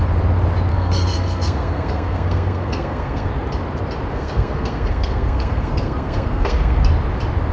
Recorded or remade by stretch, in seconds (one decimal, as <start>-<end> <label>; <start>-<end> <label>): 0.0-0.7 recorded; 0.7-3.3 remade; 3.3-4.1 recorded; 4.1-6.8 remade; 6.8-7.5 recorded